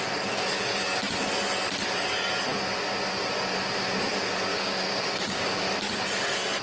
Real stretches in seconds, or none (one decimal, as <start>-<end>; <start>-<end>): 0.0-4.5; 5.6-6.6